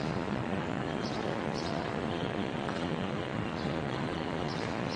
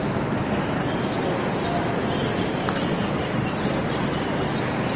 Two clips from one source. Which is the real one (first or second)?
second